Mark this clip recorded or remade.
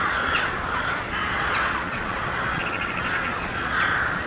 remade